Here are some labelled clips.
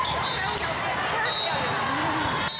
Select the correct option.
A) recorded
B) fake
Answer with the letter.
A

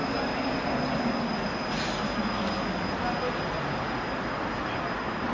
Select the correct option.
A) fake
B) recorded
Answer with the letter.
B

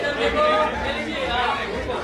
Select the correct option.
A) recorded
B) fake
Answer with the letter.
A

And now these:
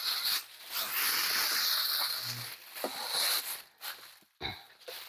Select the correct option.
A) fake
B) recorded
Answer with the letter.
B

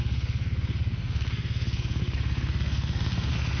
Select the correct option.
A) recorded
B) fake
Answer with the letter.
B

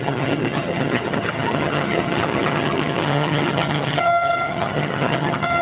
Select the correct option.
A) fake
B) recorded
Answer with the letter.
A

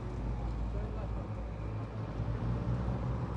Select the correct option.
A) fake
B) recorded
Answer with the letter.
B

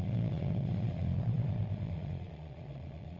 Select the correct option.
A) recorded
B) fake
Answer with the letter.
B